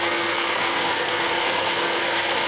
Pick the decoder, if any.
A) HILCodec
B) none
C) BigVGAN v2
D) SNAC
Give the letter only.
D